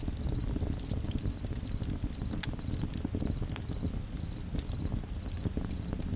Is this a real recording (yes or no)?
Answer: yes